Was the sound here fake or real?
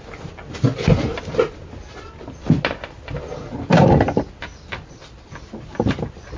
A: real